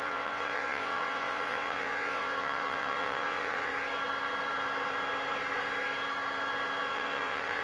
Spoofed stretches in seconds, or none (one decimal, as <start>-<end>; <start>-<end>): 0.0-3.7; 6.9-7.6